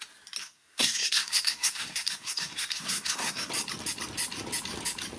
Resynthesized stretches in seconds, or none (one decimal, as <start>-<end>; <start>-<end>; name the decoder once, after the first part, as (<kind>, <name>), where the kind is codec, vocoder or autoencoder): 0.4-3.5 (codec, SNAC)

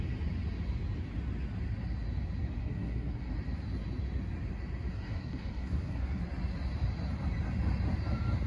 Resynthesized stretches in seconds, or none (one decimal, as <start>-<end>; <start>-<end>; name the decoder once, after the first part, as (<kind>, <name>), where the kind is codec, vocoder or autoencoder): 2.6-3.3 (codec, SNAC); 4.9-6.2

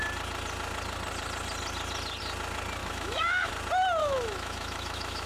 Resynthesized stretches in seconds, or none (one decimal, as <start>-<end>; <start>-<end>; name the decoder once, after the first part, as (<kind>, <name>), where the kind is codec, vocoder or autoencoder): 2.8-3.5 (autoencoder, DAC-VAE); 4.0-5.3

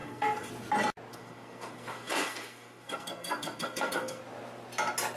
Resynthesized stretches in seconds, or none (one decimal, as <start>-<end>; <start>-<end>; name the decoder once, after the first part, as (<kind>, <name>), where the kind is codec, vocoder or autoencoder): 0.0-0.5 (codec, SNAC); 1.1-4.2